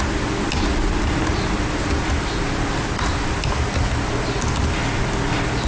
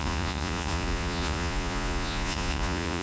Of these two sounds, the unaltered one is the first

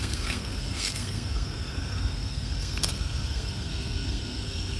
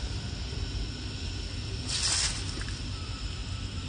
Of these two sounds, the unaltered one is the second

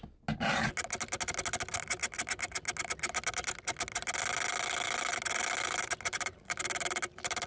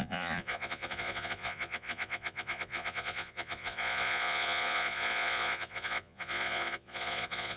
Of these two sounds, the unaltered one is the first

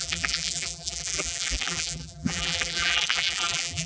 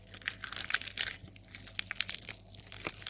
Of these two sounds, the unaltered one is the second